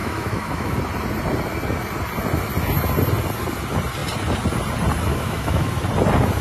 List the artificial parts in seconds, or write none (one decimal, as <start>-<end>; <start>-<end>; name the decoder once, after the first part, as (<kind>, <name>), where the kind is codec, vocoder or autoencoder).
0.0-0.8 (autoencoder, DAC-VAE); 5.1-5.7